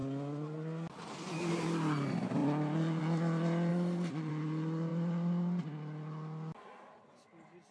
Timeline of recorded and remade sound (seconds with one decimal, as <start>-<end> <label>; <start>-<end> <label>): 0.0-3.7 recorded; 3.7-4.3 remade; 4.3-7.7 recorded